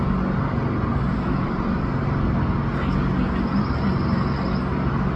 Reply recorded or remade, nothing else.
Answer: recorded